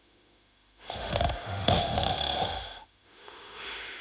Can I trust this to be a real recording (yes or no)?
no